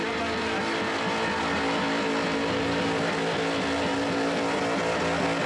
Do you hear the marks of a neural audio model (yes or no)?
no